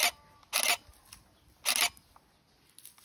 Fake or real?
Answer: real